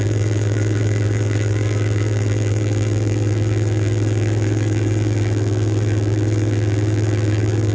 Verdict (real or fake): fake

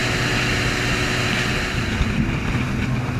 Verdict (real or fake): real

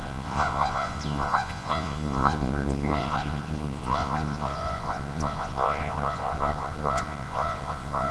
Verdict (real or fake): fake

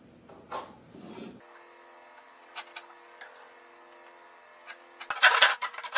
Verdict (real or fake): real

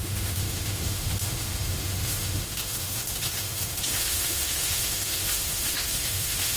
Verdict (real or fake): fake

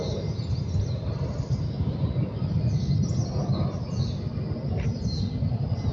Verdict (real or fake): real